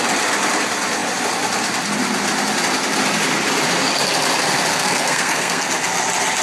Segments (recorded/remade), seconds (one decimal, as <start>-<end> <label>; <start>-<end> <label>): 0.0-4.7 recorded; 4.7-5.7 remade; 5.7-6.4 recorded